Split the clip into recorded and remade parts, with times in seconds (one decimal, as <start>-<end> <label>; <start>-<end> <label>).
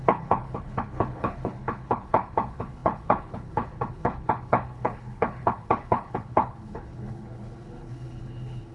0.0-8.7 remade